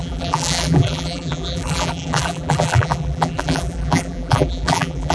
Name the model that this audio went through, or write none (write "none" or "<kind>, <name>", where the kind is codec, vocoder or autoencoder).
vocoder, BigVGAN v2